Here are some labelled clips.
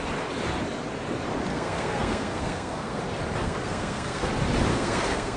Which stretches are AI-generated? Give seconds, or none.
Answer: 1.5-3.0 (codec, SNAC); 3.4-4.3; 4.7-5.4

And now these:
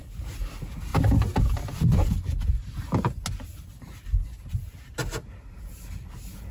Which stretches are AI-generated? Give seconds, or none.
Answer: none